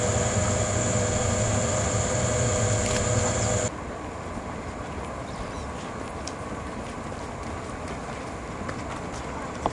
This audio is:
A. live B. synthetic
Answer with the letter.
A